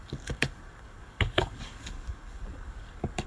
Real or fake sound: fake